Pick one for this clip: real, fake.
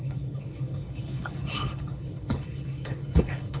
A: fake